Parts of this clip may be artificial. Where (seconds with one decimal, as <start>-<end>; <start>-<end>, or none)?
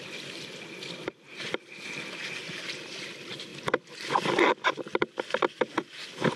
0.0-6.4